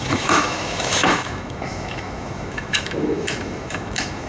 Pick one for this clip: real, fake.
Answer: fake